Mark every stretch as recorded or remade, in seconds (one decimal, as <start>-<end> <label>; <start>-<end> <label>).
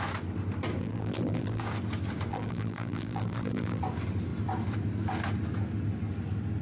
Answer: 0.0-0.8 recorded; 0.8-1.6 remade; 1.6-2.3 recorded; 2.3-3.8 remade; 3.8-6.6 recorded